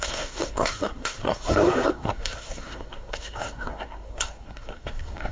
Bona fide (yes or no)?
no